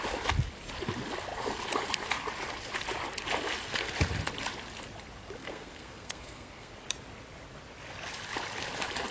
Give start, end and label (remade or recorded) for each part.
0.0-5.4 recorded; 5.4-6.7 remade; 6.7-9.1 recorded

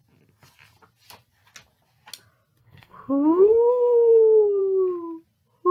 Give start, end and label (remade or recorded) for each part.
0.0-2.6 recorded; 2.6-4.6 remade; 4.6-5.7 recorded